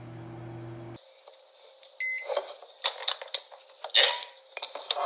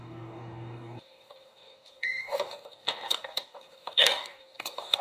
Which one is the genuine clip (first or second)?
first